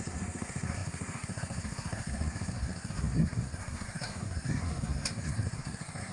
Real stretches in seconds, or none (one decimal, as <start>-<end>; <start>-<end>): none